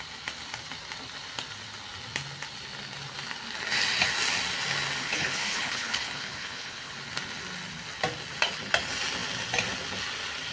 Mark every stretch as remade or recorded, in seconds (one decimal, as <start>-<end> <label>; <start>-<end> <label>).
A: 0.0-5.0 recorded; 5.0-6.9 remade; 6.9-10.5 recorded